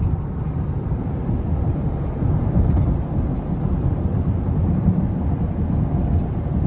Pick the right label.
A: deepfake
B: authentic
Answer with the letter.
B